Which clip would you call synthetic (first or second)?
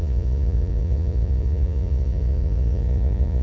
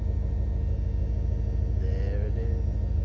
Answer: first